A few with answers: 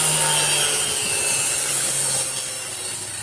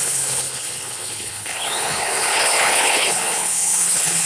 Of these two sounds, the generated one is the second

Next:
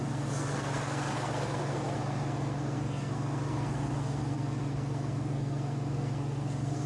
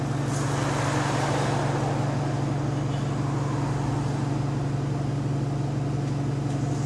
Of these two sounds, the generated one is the first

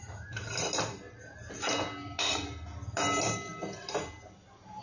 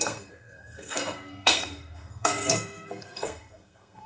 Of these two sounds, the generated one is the second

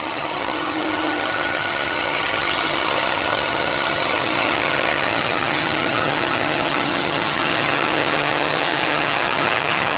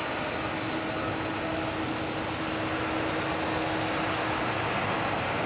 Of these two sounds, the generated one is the first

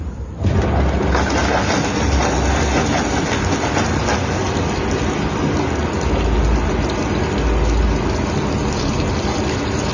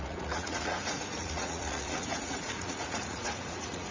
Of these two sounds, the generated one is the second